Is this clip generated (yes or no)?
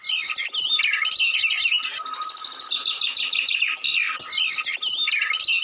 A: no